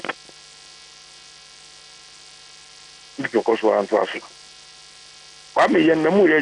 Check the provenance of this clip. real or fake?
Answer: real